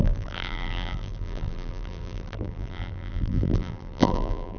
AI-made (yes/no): yes